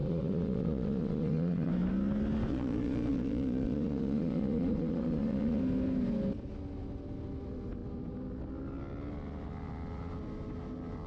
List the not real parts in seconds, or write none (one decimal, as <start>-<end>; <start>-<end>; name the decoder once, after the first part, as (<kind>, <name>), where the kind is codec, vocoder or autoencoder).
0.0-1.7 (vocoder, Vocos); 2.5-5.6